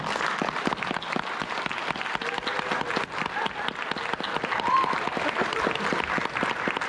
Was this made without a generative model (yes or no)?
yes